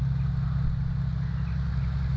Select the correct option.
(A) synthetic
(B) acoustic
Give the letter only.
B